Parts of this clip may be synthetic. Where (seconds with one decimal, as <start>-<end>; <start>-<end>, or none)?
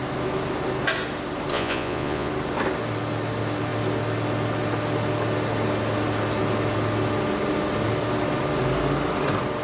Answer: 1.5-2.3